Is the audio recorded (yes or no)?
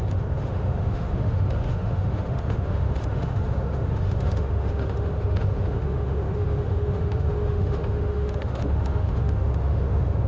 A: no